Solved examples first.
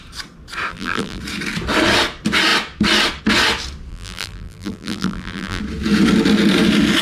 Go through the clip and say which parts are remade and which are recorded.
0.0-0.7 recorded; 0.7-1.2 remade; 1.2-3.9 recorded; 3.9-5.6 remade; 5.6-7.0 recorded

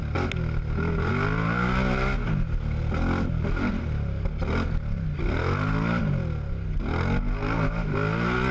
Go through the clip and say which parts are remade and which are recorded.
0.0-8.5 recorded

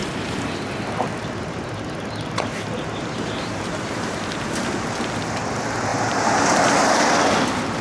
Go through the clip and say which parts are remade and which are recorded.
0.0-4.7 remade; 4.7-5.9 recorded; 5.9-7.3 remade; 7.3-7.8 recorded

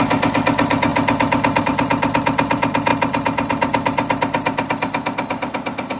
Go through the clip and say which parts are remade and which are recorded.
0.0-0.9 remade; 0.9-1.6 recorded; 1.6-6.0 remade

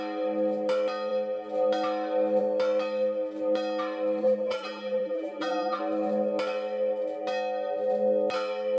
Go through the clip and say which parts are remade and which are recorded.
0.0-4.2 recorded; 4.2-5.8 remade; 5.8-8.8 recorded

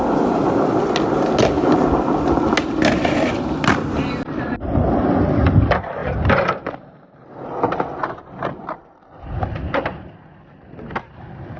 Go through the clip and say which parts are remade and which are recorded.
0.0-11.6 recorded

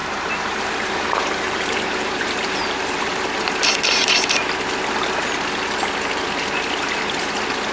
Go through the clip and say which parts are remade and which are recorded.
0.0-3.2 remade; 3.2-7.7 recorded

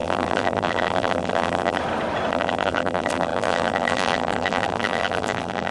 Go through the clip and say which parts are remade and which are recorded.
0.0-1.8 remade; 1.8-2.3 recorded; 2.3-5.7 remade